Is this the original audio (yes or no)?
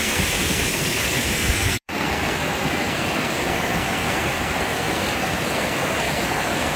no